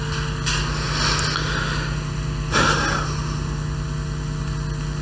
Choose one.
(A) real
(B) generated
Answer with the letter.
A